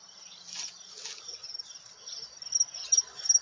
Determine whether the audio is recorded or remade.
recorded